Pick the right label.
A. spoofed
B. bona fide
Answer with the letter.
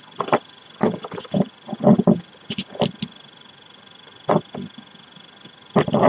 B